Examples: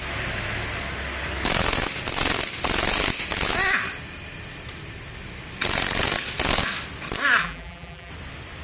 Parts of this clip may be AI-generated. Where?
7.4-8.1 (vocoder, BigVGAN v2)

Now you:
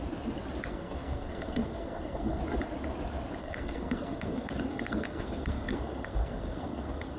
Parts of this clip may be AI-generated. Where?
0.7-2.4 (codec, SNAC); 3.4-7.2